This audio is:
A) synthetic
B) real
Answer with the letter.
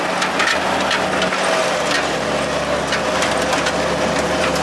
B